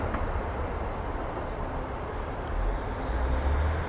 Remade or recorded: recorded